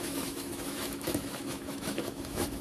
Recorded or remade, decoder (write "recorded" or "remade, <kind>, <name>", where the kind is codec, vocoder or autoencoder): remade, autoencoder, DAC-VAE